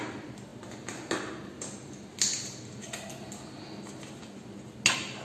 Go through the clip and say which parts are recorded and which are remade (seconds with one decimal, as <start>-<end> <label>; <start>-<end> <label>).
0.0-5.2 recorded